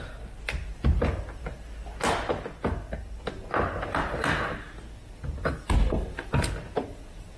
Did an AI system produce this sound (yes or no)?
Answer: no